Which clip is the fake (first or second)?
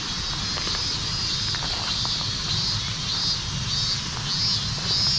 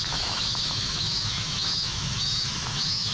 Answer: second